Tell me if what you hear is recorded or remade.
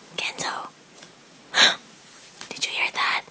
remade